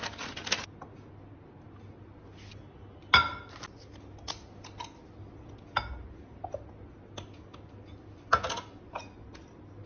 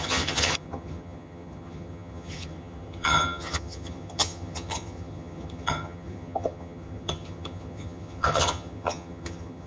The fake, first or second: second